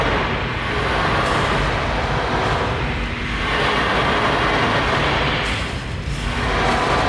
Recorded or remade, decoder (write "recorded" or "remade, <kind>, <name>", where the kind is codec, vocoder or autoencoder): recorded